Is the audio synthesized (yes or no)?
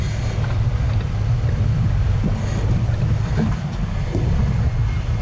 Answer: no